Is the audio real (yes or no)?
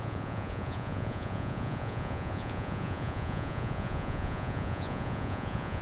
no